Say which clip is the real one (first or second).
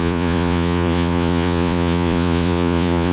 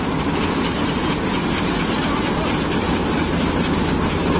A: second